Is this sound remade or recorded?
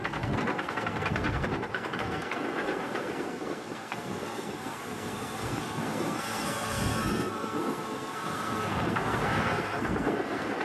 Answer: remade